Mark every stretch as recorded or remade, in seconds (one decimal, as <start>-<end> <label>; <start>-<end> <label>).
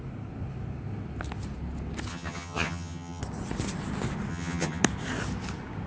0.0-2.1 recorded; 2.1-3.2 remade; 3.2-4.3 recorded; 4.3-4.8 remade; 4.8-5.9 recorded